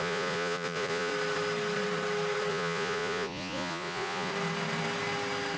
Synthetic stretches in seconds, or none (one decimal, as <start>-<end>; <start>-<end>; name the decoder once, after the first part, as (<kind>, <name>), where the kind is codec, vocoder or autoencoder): 0.0-1.1 (vocoder, Vocos); 2.5-4.3